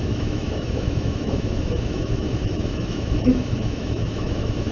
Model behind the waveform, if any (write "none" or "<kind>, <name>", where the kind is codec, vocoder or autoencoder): autoencoder, DAC-VAE